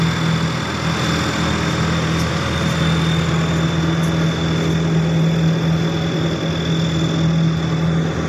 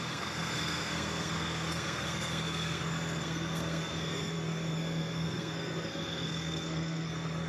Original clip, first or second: first